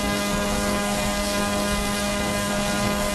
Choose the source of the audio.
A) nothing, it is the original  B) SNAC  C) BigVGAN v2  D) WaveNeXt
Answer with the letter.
B